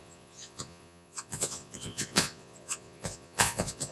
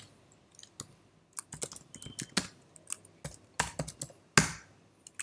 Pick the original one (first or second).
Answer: second